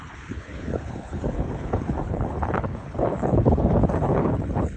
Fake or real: fake